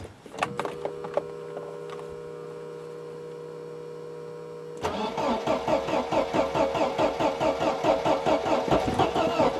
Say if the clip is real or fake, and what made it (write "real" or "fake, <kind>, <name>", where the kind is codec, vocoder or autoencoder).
real